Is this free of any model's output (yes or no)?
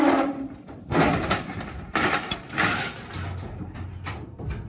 yes